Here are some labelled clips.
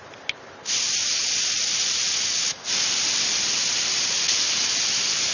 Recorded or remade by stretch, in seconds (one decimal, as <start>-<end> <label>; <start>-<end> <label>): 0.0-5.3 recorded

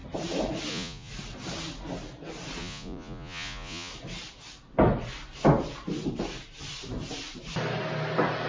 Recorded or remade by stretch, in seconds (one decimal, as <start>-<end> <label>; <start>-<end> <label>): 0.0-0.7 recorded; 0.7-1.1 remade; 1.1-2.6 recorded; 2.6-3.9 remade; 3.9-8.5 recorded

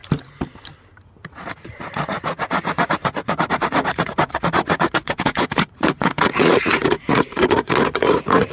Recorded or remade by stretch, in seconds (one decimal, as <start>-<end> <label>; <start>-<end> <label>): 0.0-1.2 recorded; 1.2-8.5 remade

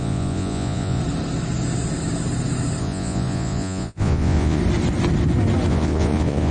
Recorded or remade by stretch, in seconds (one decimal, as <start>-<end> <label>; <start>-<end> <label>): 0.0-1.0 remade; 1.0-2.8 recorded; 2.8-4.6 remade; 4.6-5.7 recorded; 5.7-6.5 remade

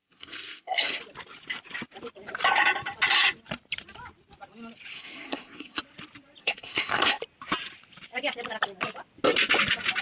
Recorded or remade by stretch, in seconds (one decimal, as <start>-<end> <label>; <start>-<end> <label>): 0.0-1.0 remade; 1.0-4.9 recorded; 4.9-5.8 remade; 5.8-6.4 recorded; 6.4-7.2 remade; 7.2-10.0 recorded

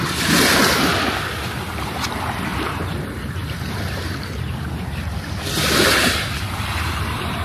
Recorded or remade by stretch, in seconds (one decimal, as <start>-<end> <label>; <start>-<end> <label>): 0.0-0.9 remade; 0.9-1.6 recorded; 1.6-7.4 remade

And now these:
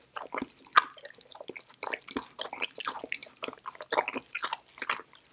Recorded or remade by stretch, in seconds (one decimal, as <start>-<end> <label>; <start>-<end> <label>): 0.0-5.3 recorded